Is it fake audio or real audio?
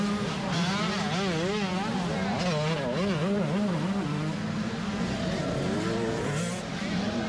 real